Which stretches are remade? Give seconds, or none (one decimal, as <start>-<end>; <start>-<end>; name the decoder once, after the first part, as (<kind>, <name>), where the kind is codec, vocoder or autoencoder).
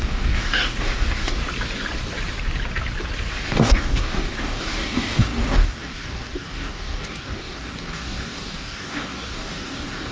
0.0-1.4 (codec, DAC); 3.3-10.1